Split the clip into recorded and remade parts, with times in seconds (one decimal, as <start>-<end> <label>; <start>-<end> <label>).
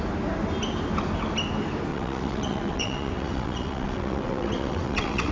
0.0-1.9 recorded; 1.9-5.3 remade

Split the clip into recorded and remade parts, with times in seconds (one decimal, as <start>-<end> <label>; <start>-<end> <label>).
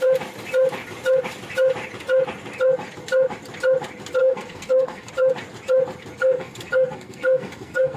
0.0-4.2 recorded; 4.2-5.1 remade; 5.1-6.2 recorded; 6.2-8.0 remade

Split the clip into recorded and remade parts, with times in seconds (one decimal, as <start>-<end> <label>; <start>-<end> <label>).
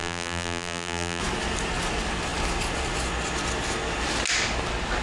0.0-1.2 remade; 1.2-5.0 recorded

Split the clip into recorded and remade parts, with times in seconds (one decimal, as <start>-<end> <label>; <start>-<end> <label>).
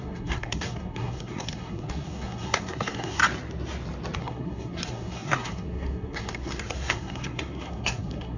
0.0-3.2 remade; 3.2-4.2 recorded; 4.2-8.4 remade